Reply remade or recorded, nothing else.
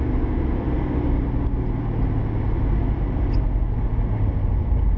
recorded